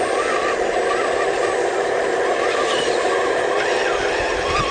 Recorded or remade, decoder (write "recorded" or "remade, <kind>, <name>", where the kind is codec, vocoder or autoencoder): remade, vocoder, BigVGAN v2